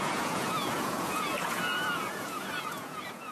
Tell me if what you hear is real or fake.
fake